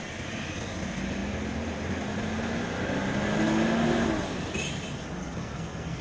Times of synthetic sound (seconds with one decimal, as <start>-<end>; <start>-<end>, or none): 5.2-6.0